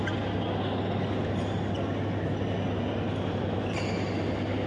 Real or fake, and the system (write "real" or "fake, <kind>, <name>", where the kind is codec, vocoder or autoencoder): real